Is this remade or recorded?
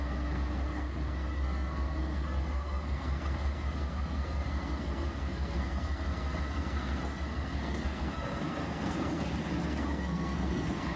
remade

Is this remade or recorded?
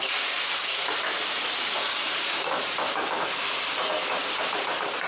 recorded